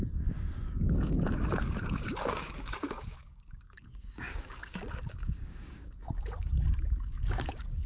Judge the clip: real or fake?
fake